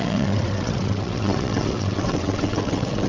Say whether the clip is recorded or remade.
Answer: remade